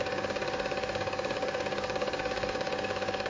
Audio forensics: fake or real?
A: fake